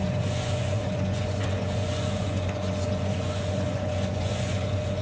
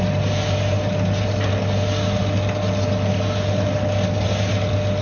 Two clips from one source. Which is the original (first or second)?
second